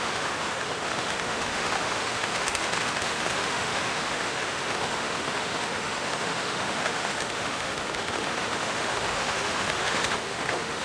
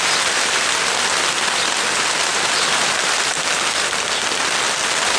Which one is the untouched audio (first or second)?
second